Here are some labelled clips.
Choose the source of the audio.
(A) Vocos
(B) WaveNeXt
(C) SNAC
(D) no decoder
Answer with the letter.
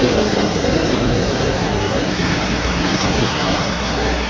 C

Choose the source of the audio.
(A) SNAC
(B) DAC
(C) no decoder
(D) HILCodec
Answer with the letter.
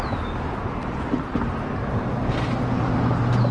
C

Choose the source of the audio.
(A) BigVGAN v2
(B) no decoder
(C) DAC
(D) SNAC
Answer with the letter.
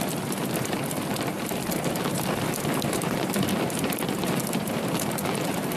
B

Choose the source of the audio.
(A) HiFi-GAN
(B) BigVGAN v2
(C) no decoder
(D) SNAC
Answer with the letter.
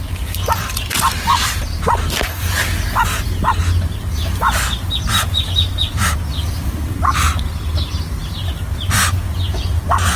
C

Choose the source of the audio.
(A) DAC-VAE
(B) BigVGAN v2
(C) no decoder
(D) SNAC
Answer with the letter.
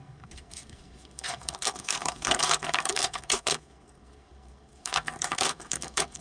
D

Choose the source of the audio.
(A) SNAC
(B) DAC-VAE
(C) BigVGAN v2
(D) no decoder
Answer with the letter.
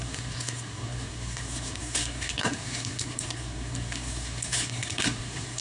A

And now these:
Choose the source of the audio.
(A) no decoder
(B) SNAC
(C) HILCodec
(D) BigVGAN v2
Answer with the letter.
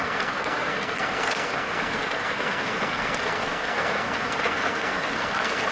B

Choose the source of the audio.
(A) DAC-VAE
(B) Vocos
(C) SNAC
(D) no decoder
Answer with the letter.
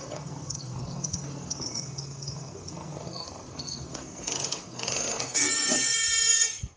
C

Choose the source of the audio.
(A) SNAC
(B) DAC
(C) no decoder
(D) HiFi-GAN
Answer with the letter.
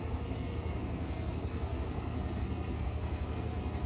A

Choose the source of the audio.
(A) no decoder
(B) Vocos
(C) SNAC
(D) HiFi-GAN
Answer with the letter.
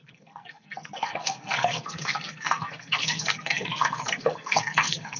C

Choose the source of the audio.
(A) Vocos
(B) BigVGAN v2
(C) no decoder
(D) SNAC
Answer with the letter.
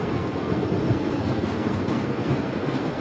D